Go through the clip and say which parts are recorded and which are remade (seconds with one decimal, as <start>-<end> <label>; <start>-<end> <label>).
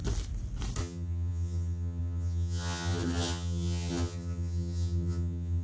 0.0-0.8 recorded; 0.8-5.6 remade